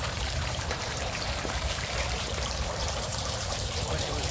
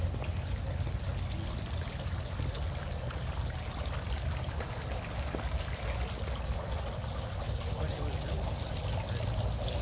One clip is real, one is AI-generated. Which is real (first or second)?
second